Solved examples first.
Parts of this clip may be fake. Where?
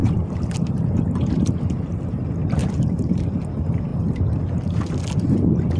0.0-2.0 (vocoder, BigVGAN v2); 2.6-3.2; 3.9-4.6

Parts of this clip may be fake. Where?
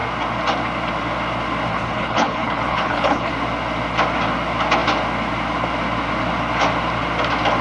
1.7-3.3 (codec, HILCodec)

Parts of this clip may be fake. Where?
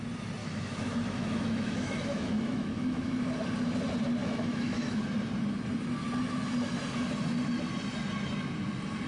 0.4-3.2 (autoencoder, DAC-VAE); 4.2-5.0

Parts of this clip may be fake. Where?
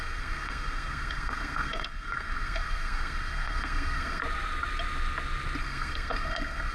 0.0-4.2 (codec, SNAC); 5.6-6.7